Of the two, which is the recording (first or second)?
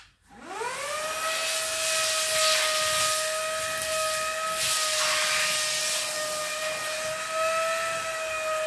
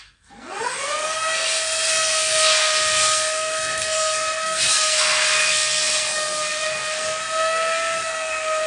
first